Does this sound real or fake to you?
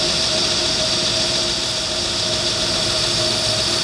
real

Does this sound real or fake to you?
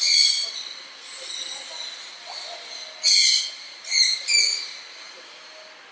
real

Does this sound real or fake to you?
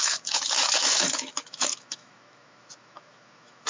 fake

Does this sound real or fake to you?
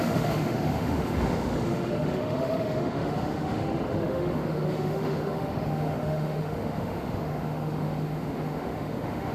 fake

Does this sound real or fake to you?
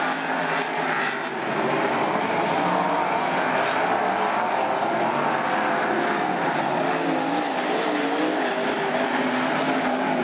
real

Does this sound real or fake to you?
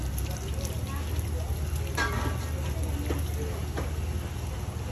real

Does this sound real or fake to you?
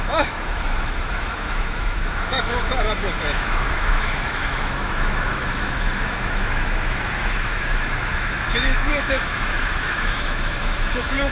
fake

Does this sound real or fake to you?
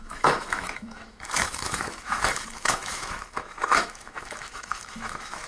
fake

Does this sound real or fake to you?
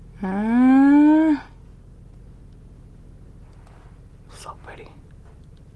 real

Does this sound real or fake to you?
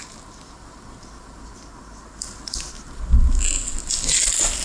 real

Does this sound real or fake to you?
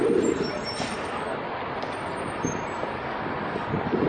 real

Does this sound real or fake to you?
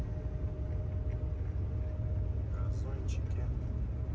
real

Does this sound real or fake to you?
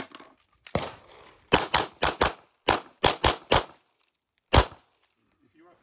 real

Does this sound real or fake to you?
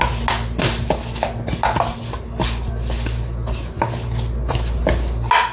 real